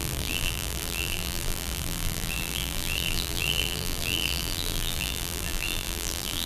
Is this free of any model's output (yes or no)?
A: no